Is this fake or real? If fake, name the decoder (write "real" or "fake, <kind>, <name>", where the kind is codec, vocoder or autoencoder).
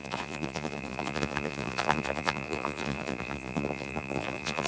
fake, vocoder, Vocos